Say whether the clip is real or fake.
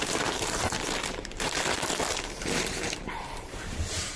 fake